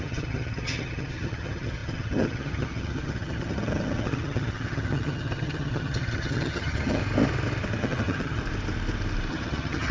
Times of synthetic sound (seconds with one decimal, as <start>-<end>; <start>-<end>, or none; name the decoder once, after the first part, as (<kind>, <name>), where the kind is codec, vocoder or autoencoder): 0.0-7.0 (vocoder, HiFi-GAN); 7.8-8.4; 9.3-9.9